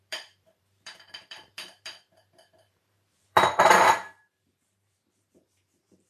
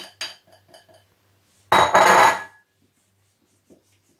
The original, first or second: second